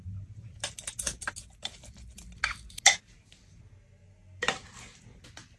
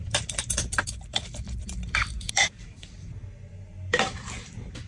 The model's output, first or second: second